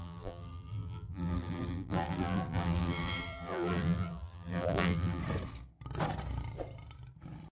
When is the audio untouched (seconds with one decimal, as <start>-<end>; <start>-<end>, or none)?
5.2-7.5